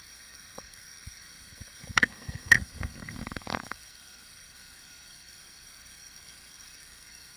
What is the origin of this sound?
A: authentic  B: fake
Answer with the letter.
B